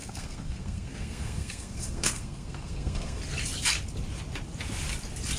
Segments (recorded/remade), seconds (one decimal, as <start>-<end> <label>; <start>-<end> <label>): 0.0-3.2 remade; 3.2-5.4 recorded